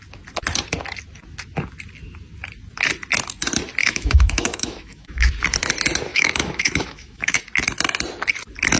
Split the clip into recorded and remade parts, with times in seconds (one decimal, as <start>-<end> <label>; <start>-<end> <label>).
0.0-3.8 recorded; 3.8-5.3 remade; 5.3-6.1 recorded; 6.1-7.4 remade; 7.4-8.8 recorded

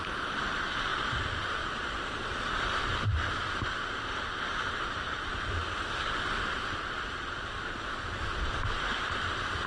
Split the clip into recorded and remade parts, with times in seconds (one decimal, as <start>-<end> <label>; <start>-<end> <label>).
0.0-9.7 recorded

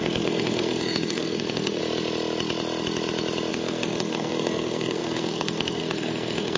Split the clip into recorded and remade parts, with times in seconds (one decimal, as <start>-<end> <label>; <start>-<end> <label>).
0.0-1.8 remade; 1.8-3.5 recorded; 3.5-6.6 remade

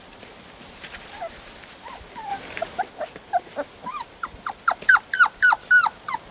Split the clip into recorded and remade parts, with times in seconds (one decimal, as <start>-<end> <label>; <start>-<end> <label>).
0.0-2.3 recorded; 2.3-2.8 remade; 2.8-6.3 recorded

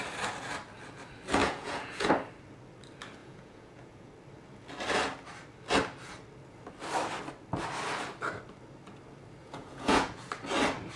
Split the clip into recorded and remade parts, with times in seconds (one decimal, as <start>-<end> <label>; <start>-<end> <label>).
0.0-1.4 recorded; 1.4-2.1 remade; 2.1-3.2 recorded; 3.2-4.1 remade; 4.1-9.4 recorded; 9.4-10.2 remade; 10.2-11.0 recorded

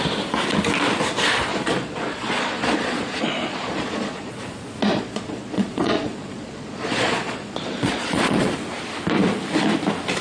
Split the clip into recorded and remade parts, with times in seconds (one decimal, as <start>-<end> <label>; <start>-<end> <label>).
0.0-1.5 recorded; 1.5-4.3 remade; 4.3-4.9 recorded; 4.9-8.5 remade; 8.5-10.2 recorded

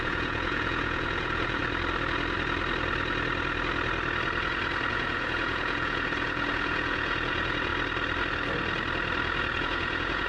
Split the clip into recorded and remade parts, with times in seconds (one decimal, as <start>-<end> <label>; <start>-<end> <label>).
0.0-1.6 remade; 1.6-4.9 recorded; 4.9-7.7 remade; 7.7-9.6 recorded; 9.6-10.3 remade

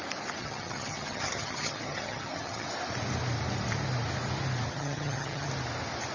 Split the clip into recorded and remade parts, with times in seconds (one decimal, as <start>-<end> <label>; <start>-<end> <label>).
0.0-0.4 recorded; 0.4-2.7 remade; 2.7-4.7 recorded; 4.7-5.5 remade; 5.5-6.1 recorded